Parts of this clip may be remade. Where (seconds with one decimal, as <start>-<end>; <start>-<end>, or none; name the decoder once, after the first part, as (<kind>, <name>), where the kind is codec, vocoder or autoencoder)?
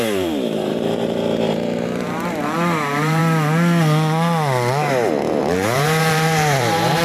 0.0-3.2 (vocoder, BigVGAN v2); 5.4-7.0